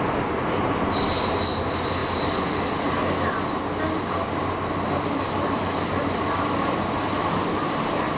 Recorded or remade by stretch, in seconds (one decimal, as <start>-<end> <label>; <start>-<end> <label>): 0.0-8.2 recorded